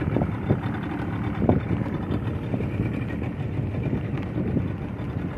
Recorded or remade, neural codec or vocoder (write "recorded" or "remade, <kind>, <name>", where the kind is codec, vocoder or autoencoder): remade, vocoder, BigVGAN v2